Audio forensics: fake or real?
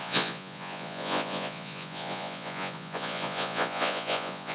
fake